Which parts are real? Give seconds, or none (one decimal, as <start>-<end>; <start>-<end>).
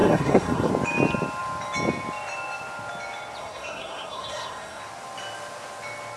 0.7-3.4; 4.8-6.2